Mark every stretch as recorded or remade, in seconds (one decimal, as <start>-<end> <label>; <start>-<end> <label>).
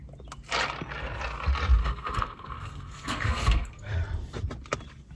0.0-1.8 recorded; 1.8-4.0 remade; 4.0-5.2 recorded